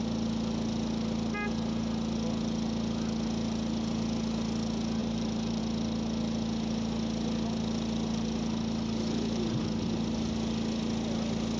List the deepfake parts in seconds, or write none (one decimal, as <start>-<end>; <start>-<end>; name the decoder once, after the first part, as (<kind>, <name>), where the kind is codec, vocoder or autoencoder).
5.0-5.6 (vocoder, BigVGAN v2)

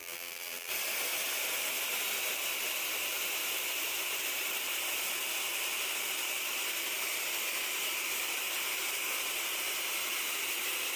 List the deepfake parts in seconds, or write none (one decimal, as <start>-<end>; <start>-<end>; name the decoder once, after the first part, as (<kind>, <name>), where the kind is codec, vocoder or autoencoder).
0.0-0.7 (vocoder, BigVGAN v2)

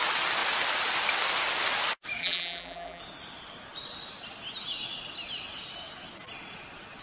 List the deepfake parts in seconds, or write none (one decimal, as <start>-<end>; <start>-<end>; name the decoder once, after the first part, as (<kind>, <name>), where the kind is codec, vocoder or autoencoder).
2.2-3.0 (vocoder, BigVGAN v2)

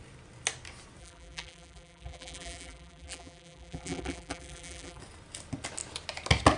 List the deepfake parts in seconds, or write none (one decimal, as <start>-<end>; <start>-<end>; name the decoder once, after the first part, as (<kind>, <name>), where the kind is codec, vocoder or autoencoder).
1.0-5.0 (vocoder, BigVGAN v2)

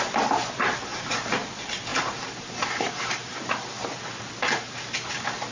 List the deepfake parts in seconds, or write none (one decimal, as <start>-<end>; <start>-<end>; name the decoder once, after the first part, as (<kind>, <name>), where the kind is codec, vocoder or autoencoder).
0.9-1.5 (vocoder, BigVGAN v2); 1.9-3.5

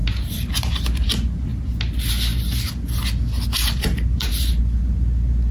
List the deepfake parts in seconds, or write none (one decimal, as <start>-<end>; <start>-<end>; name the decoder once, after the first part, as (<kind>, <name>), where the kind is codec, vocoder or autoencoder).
0.0-1.1 (vocoder, BigVGAN v2); 3.6-4.6

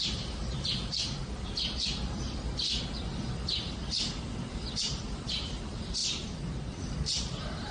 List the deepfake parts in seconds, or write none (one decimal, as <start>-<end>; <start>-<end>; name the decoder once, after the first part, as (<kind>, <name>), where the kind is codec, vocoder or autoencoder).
0.0-1.2 (vocoder, BigVGAN v2); 4.8-6.0; 6.8-7.7

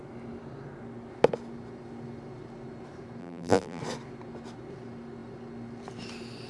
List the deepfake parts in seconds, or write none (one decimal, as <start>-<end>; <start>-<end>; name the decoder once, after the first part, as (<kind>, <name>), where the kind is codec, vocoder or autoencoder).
3.2-3.8 (vocoder, BigVGAN v2)